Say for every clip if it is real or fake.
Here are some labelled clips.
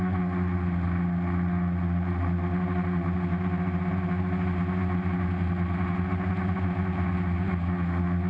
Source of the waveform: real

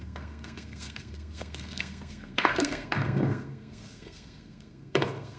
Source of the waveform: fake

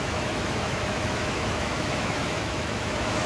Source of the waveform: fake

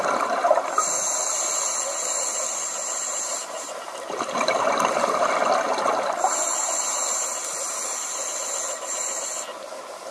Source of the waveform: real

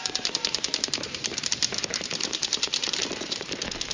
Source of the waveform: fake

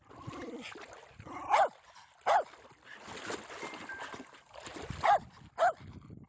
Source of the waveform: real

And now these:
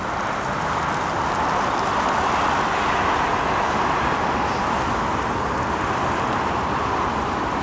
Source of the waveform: real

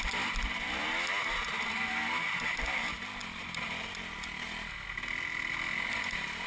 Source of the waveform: real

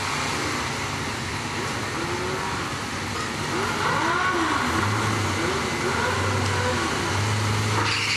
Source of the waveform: real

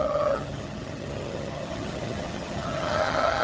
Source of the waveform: fake